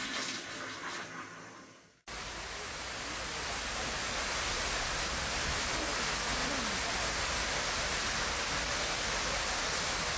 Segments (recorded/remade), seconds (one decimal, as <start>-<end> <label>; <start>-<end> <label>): 0.0-10.2 recorded